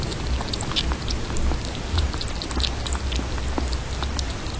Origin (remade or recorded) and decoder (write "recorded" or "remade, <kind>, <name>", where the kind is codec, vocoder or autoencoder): recorded